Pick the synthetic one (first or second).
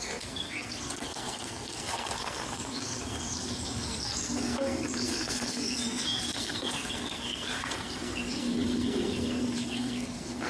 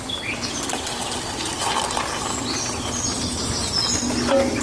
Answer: first